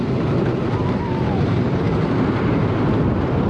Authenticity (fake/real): real